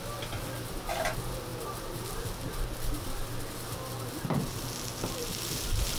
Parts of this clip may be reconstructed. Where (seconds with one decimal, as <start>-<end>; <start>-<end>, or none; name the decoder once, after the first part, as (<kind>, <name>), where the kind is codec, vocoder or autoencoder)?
none